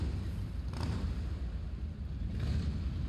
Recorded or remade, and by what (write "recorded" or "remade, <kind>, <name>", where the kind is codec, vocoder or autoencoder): recorded